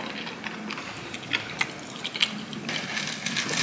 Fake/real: real